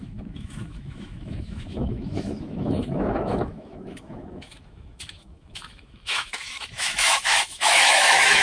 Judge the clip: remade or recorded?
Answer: remade